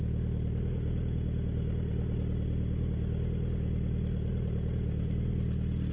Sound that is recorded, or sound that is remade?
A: recorded